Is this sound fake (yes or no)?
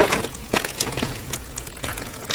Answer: yes